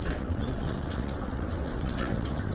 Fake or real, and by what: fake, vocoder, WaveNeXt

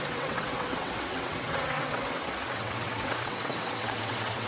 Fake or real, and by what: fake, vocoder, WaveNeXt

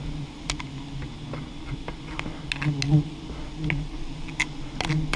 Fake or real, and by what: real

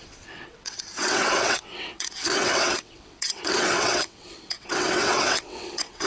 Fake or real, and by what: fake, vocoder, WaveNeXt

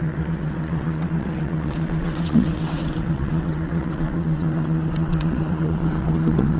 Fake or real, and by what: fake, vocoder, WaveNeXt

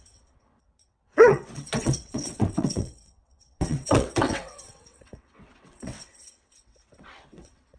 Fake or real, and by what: fake, vocoder, WaveNeXt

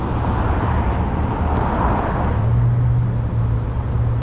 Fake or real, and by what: real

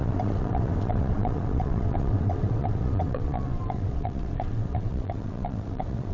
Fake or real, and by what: fake, vocoder, WaveNeXt